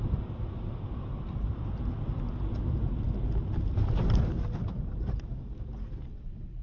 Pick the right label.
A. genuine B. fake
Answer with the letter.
B